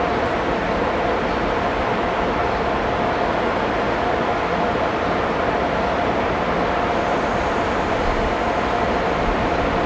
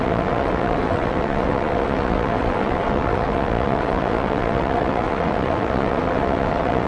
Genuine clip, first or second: first